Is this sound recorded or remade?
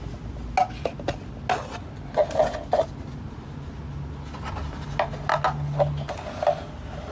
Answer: recorded